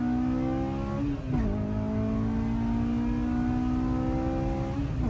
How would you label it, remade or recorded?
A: recorded